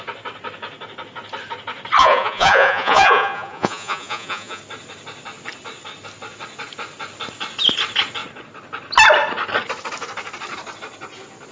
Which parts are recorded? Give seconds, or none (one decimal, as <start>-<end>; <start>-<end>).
0.0-2.0; 4.6-11.5